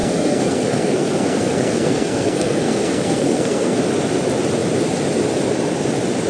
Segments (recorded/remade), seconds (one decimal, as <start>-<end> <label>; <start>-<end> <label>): 0.0-3.8 remade; 3.8-6.3 recorded